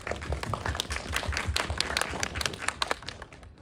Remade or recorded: recorded